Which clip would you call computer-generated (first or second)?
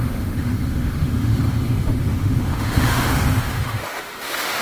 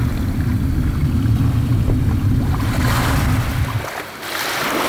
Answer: first